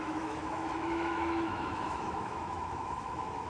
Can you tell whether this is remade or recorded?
remade